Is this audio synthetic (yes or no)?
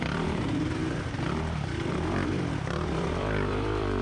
yes